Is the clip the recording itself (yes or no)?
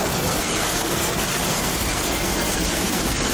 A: no